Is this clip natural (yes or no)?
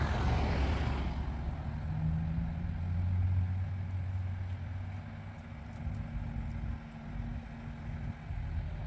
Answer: yes